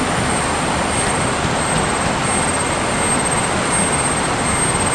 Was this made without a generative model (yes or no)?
yes